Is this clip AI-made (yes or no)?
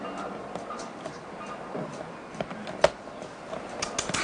no